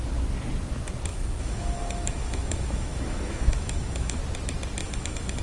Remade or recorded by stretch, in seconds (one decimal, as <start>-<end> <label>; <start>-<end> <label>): 0.0-1.1 recorded; 1.1-4.2 remade; 4.2-4.8 recorded; 4.8-5.4 remade